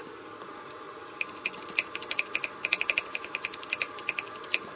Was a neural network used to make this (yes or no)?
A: no